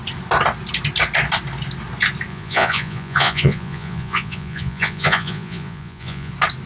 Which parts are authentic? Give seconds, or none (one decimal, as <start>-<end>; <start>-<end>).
0.0-2.3; 6.3-6.7